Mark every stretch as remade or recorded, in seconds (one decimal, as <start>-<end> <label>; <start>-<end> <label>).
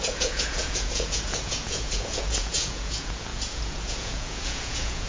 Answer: 0.0-5.1 remade